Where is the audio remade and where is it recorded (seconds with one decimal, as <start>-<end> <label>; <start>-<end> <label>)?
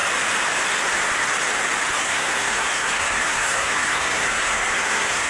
0.0-2.0 recorded; 2.0-5.3 remade